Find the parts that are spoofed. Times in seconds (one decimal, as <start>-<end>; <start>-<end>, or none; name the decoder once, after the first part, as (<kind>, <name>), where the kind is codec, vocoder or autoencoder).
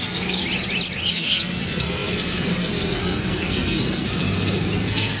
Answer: 0.0-0.4 (codec, SNAC); 1.1-5.2